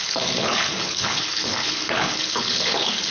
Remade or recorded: remade